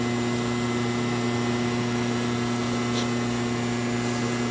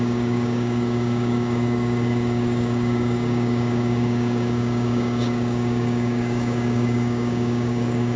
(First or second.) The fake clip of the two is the second